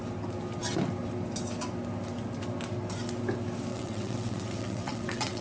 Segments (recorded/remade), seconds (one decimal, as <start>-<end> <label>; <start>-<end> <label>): 0.0-3.7 recorded; 3.7-5.4 remade